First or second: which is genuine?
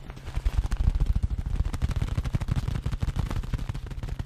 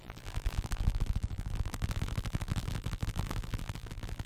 first